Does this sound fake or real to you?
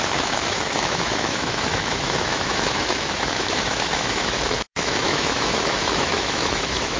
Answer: fake